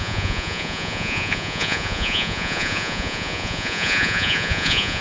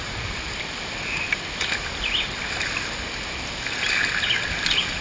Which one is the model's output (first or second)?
first